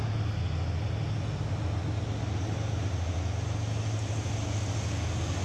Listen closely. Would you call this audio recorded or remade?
recorded